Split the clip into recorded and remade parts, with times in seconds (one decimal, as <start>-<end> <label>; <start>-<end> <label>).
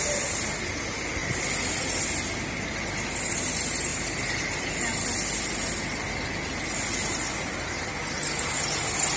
0.0-1.2 recorded; 1.2-2.0 remade; 2.0-3.9 recorded; 3.9-4.7 remade; 4.7-9.2 recorded